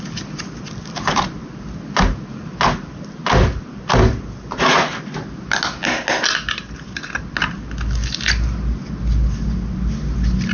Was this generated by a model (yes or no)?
no